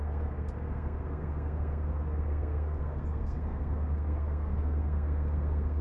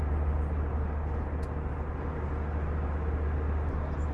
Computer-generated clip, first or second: first